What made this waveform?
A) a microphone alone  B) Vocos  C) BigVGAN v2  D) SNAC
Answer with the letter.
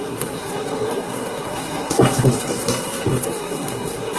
D